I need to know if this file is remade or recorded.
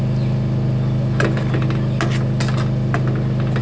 recorded